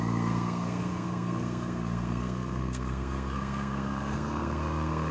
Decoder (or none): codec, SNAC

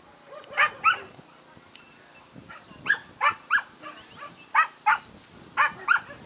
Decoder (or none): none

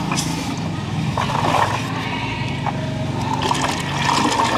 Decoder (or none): none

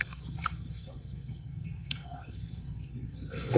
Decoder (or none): codec, SNAC